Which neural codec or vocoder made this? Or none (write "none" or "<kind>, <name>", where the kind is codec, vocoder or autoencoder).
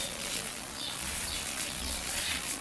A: vocoder, Vocos